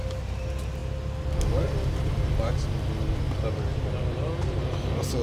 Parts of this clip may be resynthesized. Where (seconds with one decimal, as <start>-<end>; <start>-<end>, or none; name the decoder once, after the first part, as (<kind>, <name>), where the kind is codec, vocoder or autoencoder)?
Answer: none